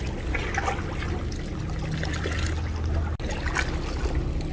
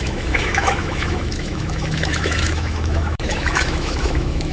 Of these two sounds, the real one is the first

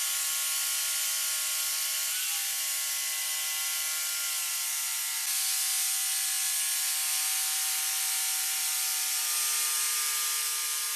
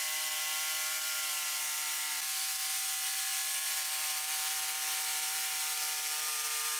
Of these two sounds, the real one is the first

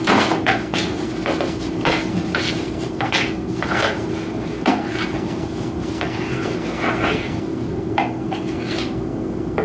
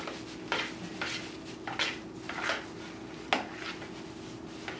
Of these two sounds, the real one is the second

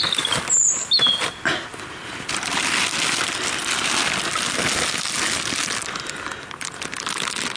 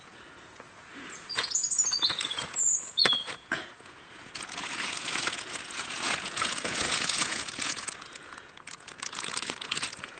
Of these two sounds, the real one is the first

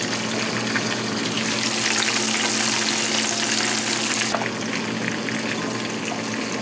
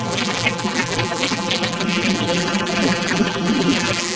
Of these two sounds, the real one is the first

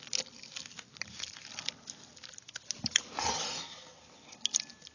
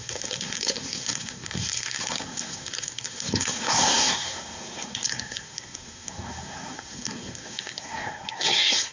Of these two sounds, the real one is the first